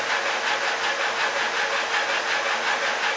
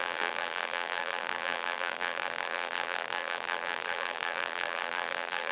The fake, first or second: second